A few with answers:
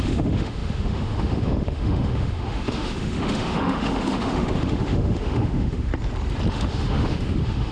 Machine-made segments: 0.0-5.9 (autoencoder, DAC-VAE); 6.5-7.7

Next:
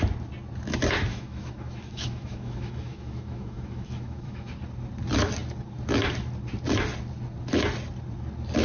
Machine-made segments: 1.1-4.5 (autoencoder, DAC-VAE)

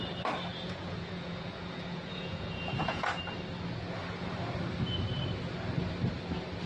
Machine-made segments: 0.5-3.0 (vocoder, Vocos)

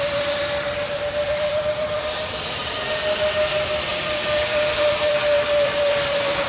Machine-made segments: 0.0-2.6 (vocoder, BigVGAN v2); 3.9-6.5

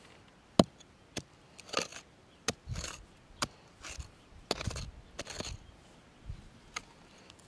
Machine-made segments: none

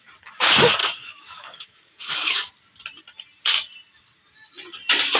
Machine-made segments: 0.8-2.5 (codec, DAC)

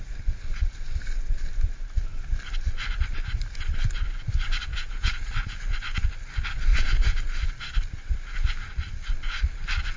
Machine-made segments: 4.7-5.3 (vocoder, Vocos)

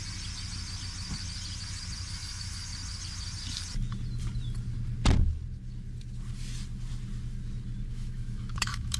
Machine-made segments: 2.1-2.7 (autoencoder, DAC-VAE); 7.9-9.0